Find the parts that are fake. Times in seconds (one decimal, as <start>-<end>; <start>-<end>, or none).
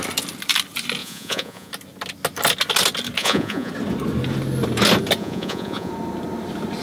1.0-1.7; 3.2-3.7; 5.2-5.9